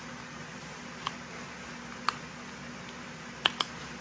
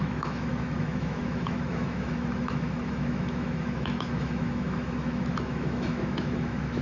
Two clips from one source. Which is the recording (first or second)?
first